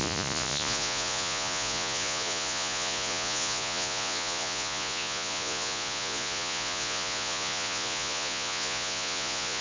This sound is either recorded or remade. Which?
remade